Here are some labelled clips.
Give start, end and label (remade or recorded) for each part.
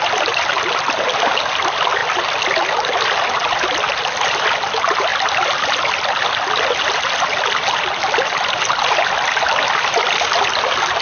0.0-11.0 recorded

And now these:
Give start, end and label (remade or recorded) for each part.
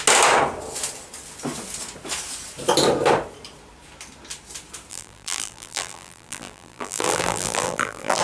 0.0-4.9 recorded; 4.9-8.2 remade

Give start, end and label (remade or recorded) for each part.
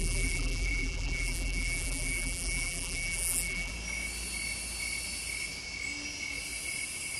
0.0-3.7 remade; 3.7-7.2 recorded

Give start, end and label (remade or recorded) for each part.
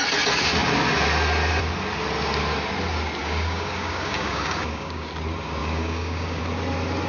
0.0-3.2 recorded; 3.2-5.1 remade; 5.1-5.6 recorded; 5.6-6.4 remade; 6.4-7.1 recorded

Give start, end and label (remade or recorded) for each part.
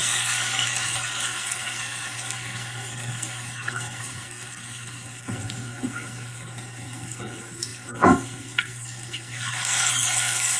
0.0-10.6 remade